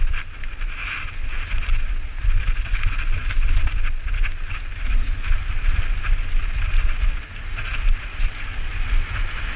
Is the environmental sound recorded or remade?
recorded